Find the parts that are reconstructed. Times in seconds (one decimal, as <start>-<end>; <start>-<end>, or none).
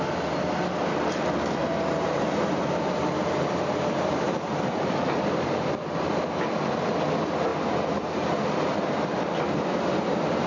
1.6-6.2; 7.5-9.2